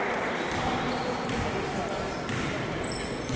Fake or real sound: real